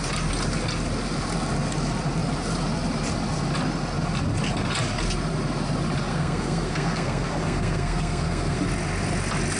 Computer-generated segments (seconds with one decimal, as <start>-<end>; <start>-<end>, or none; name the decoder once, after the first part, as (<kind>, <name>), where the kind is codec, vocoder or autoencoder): 6.1-8.6 (codec, SNAC)